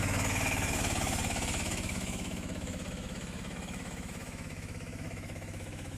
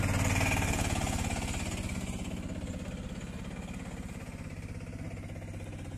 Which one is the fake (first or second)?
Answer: first